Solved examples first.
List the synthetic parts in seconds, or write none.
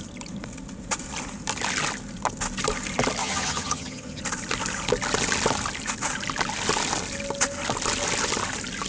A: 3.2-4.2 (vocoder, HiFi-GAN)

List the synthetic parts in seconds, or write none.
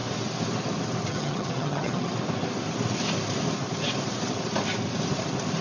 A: 1.1-2.1 (vocoder, HiFi-GAN)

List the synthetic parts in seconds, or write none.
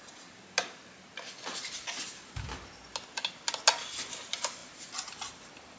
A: none